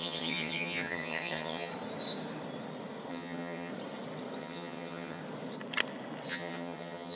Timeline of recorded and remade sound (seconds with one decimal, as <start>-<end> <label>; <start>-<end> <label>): 0.0-1.7 remade; 1.7-3.1 recorded; 3.1-3.7 remade; 3.7-4.4 recorded; 4.4-5.2 remade; 5.2-6.3 recorded; 6.3-7.2 remade